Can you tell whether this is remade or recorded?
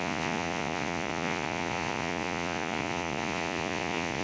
remade